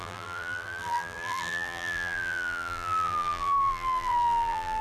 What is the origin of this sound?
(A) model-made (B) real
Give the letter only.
A